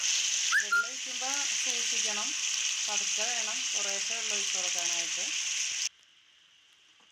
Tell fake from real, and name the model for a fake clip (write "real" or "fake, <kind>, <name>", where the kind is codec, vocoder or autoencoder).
real